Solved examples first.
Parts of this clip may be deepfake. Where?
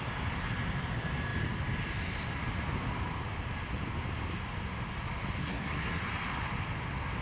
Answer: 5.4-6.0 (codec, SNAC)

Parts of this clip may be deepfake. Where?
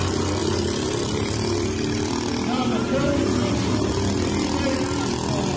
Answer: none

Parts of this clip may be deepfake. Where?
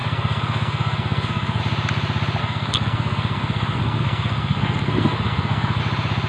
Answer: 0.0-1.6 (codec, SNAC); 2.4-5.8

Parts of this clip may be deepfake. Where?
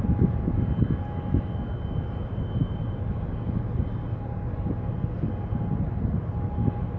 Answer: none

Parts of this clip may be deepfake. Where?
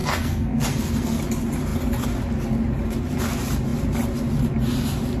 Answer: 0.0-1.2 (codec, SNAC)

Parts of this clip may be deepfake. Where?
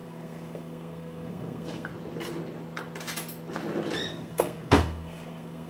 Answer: 0.0-1.9 (codec, SNAC); 4.1-5.7